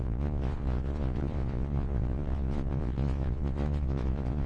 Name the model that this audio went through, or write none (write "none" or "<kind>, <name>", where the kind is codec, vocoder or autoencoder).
vocoder, Vocos